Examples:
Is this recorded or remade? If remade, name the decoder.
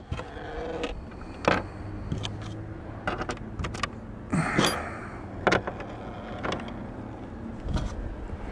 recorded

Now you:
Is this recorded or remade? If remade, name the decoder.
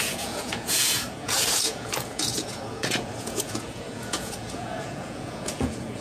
remade, vocoder, Vocos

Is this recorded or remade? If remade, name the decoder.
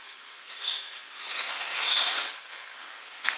remade, codec, SNAC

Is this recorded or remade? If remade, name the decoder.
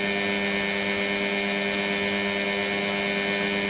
recorded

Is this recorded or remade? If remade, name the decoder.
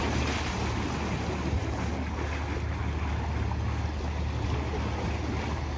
recorded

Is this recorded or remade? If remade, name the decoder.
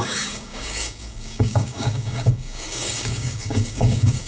remade, codec, DAC